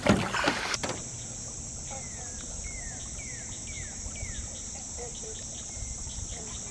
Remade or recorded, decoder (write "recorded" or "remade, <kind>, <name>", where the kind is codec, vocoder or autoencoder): recorded